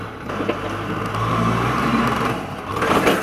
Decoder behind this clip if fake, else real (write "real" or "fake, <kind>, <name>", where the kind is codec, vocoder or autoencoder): real